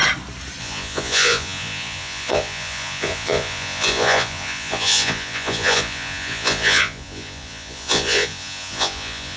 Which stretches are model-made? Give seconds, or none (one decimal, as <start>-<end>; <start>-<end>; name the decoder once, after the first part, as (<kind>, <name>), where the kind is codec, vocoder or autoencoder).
0.6-9.4 (vocoder, Vocos)